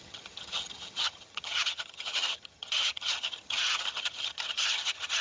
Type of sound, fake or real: fake